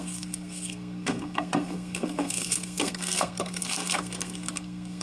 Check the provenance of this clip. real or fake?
fake